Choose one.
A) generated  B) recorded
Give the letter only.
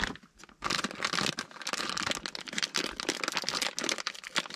B